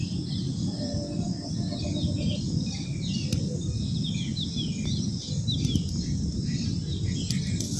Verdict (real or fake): real